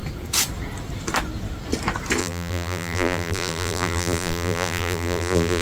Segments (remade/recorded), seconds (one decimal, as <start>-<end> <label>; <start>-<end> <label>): 0.0-2.2 recorded; 2.2-5.6 remade